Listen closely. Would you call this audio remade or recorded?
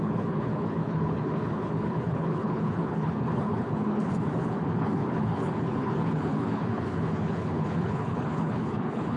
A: remade